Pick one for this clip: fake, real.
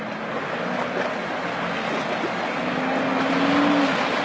real